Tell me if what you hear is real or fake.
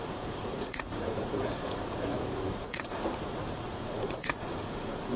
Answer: fake